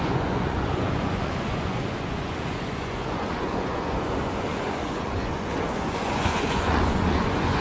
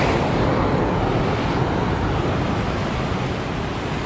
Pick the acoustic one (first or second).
second